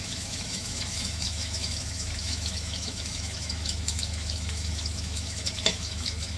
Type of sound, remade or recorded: remade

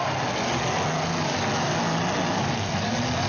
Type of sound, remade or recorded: recorded